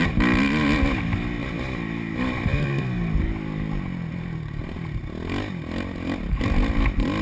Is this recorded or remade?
recorded